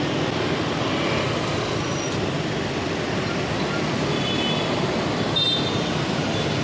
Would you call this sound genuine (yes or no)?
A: yes